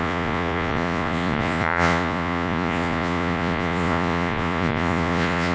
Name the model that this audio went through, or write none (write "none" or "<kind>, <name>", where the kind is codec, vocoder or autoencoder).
vocoder, Vocos